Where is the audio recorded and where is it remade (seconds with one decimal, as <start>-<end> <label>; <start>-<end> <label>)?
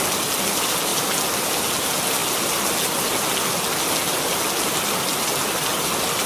0.0-0.9 recorded; 0.9-1.6 remade; 1.6-6.3 recorded